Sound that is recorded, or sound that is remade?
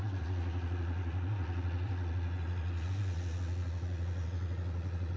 remade